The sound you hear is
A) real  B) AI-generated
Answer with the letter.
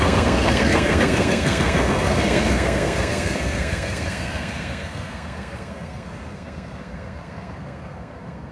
B